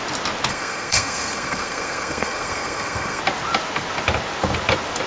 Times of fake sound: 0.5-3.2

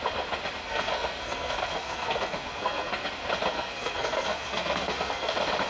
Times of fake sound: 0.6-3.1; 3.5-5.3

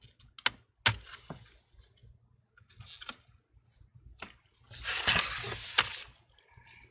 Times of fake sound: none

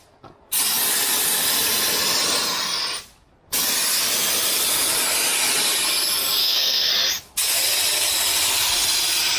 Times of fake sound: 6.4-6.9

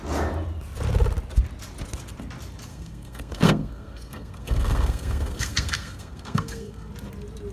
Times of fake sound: 2.7-6.9